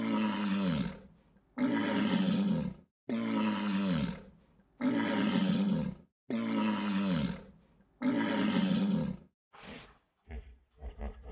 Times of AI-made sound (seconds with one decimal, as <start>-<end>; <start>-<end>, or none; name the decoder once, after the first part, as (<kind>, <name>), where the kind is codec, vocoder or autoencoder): none